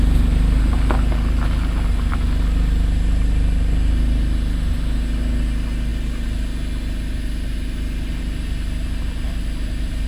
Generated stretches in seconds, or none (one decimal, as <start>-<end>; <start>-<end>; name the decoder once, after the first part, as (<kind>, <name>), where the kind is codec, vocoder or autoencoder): none